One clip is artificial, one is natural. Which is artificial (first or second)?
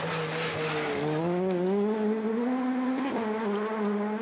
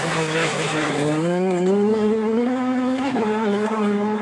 second